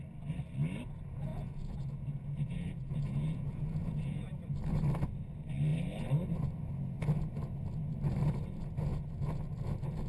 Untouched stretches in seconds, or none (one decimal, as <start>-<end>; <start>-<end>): 0.0-1.3; 4.4-10.1